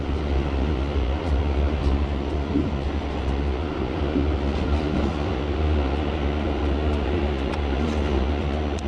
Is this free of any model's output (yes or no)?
no